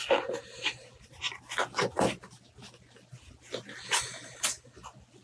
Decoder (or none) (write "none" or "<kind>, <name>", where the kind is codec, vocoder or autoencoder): none